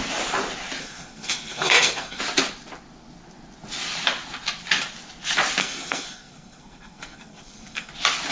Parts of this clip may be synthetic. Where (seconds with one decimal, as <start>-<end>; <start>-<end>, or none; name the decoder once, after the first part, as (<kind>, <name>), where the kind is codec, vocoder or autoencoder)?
0.8-2.2 (codec, SNAC); 5.6-7.9